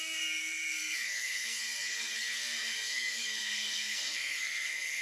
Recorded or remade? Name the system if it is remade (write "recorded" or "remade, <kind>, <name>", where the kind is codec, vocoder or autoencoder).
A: remade, codec, SNAC